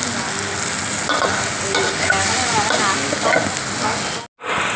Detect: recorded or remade recorded